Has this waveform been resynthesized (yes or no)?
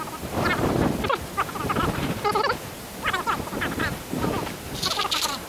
yes